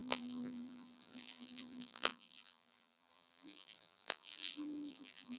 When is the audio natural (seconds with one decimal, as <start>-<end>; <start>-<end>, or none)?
none